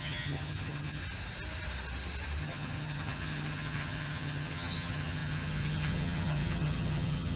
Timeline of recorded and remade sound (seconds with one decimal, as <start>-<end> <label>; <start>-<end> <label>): 0.0-1.0 remade; 1.0-2.4 recorded; 2.4-7.4 remade